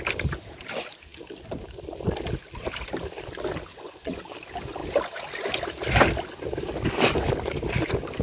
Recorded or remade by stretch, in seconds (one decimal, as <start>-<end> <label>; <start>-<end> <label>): 0.0-3.7 recorded; 3.7-4.2 remade; 4.2-8.2 recorded